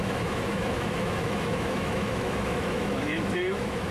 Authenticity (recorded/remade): remade